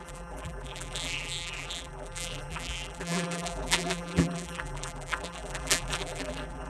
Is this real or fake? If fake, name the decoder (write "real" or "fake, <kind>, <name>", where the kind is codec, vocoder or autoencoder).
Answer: fake, vocoder, BigVGAN v2